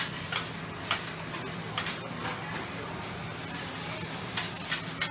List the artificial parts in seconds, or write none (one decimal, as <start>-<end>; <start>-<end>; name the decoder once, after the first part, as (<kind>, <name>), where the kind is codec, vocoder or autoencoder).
none